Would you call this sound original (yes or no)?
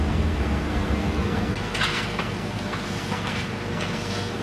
no